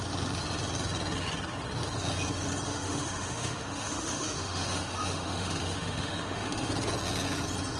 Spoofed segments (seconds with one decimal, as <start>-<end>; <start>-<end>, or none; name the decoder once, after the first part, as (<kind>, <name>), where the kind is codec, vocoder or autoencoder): 2.7-6.7 (autoencoder, DAC-VAE)